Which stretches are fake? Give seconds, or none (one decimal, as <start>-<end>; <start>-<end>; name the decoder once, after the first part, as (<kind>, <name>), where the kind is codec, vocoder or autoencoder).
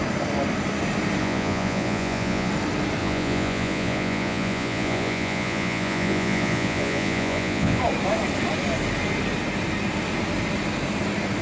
1.2-2.5 (vocoder, Vocos); 3.0-7.8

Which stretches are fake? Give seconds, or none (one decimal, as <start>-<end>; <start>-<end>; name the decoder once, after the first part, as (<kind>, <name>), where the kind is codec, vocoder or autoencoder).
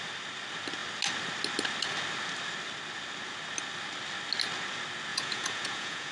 5.1-6.1 (vocoder, Vocos)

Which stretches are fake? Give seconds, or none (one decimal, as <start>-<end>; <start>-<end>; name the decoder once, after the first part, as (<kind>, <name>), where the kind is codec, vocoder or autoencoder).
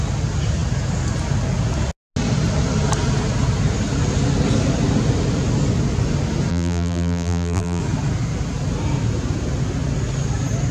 6.5-7.8 (vocoder, BigVGAN v2)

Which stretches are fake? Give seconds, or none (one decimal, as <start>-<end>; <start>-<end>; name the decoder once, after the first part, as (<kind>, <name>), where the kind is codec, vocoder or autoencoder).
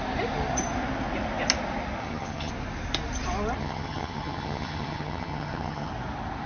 2.0-2.5 (vocoder, HiFi-GAN); 3.6-5.9